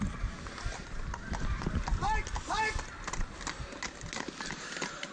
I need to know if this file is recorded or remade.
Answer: recorded